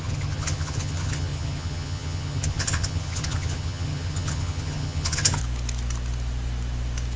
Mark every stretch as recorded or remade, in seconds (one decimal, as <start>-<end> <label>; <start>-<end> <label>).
0.0-5.4 remade; 5.4-7.2 recorded